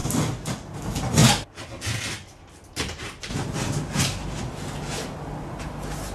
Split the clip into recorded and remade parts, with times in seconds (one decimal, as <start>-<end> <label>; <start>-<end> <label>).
0.0-6.1 recorded